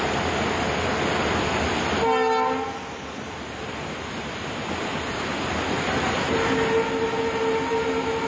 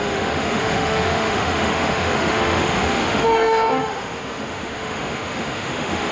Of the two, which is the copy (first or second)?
second